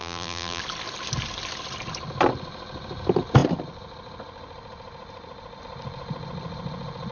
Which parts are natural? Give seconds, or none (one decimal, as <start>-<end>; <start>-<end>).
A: 0.6-7.1